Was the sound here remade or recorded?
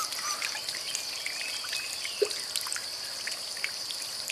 recorded